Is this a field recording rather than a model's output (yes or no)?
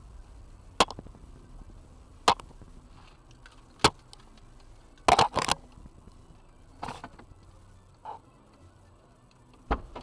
yes